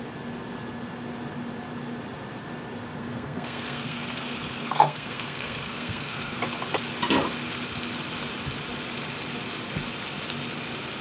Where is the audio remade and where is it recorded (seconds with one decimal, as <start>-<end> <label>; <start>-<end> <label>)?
0.0-3.0 recorded; 3.0-6.4 remade; 6.4-11.0 recorded